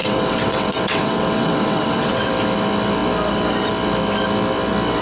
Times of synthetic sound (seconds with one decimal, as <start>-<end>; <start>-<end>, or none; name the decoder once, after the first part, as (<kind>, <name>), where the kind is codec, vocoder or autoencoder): 0.0-2.3 (vocoder, WaveNeXt)

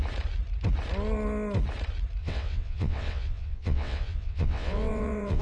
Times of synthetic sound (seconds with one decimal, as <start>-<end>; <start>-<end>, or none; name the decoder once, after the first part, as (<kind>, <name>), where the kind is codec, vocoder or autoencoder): 2.2-5.4 (vocoder, WaveNeXt)

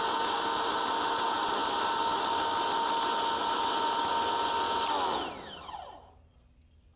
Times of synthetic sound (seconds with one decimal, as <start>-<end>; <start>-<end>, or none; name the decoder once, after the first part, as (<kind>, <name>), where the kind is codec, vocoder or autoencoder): none

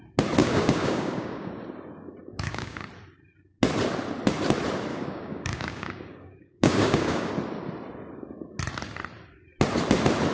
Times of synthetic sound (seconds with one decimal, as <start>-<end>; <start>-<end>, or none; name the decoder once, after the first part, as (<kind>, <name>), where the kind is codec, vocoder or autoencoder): 0.4-1.5 (codec, DAC); 2.2-2.9; 4.9-7.3

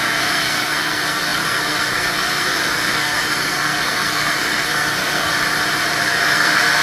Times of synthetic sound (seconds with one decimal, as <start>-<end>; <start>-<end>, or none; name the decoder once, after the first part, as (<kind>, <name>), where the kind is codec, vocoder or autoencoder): 0.0-5.3 (codec, SNAC); 6.0-6.8

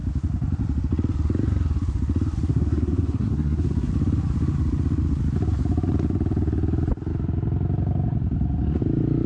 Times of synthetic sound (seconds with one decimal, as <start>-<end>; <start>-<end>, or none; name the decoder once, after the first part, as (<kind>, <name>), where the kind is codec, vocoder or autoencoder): 2.5-3.9 (codec, SNAC)